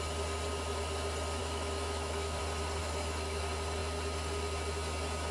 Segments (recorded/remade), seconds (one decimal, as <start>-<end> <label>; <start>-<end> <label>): 0.0-1.4 recorded; 1.4-2.4 remade; 2.4-2.8 recorded; 2.8-3.4 remade; 3.4-5.3 recorded